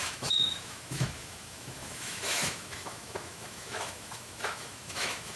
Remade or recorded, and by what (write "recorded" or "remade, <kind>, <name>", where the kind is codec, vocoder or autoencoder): remade, autoencoder, DAC-VAE